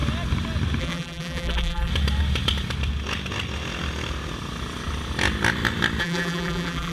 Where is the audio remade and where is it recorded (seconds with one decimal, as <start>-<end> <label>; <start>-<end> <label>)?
0.0-0.8 recorded; 0.8-1.9 remade; 1.9-6.0 recorded; 6.0-6.9 remade